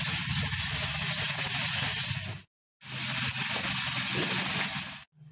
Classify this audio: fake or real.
real